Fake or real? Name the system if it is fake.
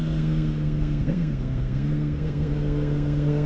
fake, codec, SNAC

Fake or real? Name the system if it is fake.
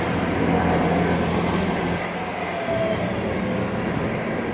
real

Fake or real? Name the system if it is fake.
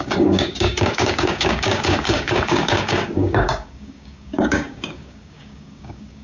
fake, codec, DAC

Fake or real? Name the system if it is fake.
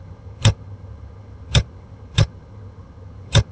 fake, vocoder, HiFi-GAN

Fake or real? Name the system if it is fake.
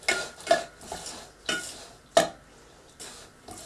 real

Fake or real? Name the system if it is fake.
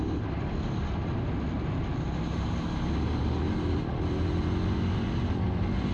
real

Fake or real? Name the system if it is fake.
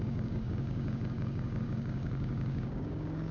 fake, codec, DAC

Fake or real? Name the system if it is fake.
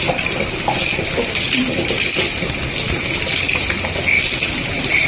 real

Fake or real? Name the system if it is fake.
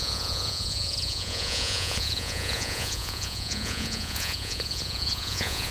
fake, vocoder, Vocos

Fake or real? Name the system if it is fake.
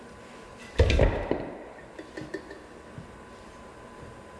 real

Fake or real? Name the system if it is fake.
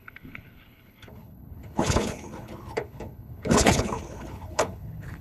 fake, codec, HILCodec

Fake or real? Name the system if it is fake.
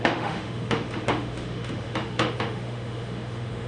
fake, autoencoder, DAC-VAE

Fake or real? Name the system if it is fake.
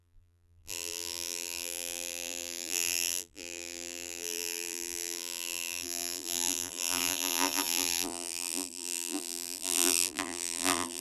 fake, vocoder, BigVGAN v2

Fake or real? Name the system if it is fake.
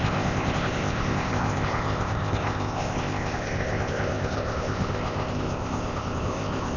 fake, codec, ZipCodec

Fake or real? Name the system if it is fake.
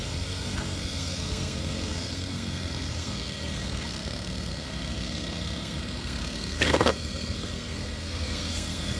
fake, codec, SNAC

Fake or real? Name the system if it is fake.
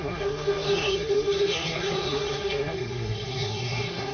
fake, codec, SNAC